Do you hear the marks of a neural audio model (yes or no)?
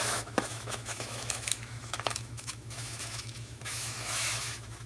yes